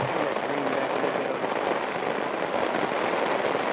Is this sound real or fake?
real